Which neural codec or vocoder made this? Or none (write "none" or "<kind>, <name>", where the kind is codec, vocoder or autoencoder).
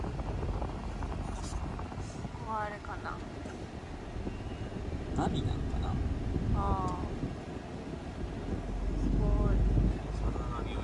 none